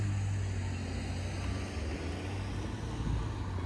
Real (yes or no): yes